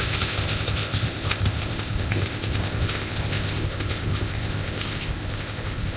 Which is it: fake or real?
fake